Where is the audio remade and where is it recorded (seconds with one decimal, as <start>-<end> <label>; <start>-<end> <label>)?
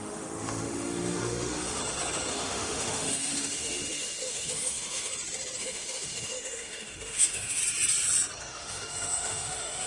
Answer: 0.0-1.8 remade; 1.8-2.3 recorded; 2.3-5.1 remade; 5.1-5.6 recorded; 5.6-7.6 remade; 7.6-8.4 recorded; 8.4-9.9 remade